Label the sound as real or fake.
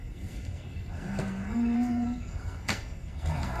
fake